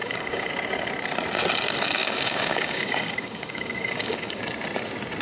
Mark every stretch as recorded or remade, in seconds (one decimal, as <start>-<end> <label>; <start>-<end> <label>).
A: 0.0-0.5 remade; 0.5-2.0 recorded; 2.0-4.4 remade; 4.4-5.2 recorded